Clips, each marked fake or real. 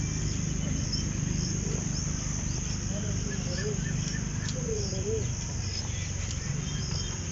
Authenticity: real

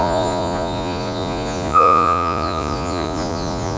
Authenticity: fake